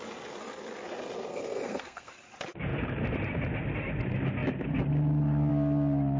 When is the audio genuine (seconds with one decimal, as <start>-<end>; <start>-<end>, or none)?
0.0-1.3; 2.1-6.2